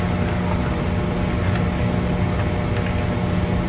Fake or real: real